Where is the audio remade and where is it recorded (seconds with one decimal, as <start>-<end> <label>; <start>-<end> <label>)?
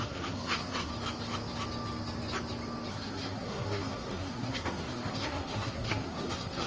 0.0-0.9 remade; 0.9-2.9 recorded; 2.9-6.7 remade